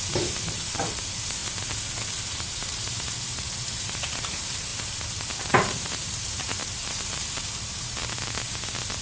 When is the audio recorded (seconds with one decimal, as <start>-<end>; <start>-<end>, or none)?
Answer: 1.4-2.2; 4.7-5.5; 8.0-9.0